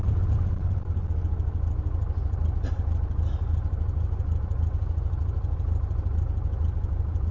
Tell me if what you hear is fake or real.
real